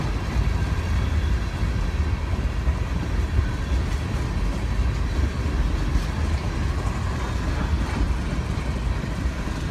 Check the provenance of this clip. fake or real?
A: real